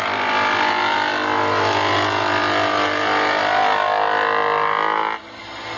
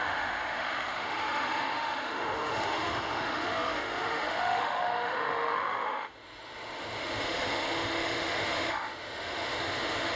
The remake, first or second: second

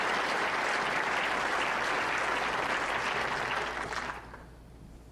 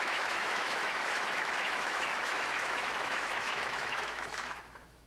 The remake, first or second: second